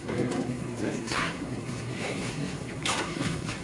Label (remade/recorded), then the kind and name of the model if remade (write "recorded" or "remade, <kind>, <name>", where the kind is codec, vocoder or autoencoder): remade, codec, SNAC